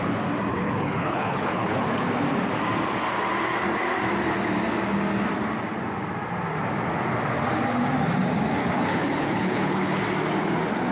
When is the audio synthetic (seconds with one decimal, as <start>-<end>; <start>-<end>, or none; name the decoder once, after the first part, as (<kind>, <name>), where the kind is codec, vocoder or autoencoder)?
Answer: 0.5-2.1 (codec, HILCodec); 8.6-10.0